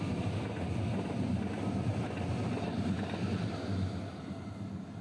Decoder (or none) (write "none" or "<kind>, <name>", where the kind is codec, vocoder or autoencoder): none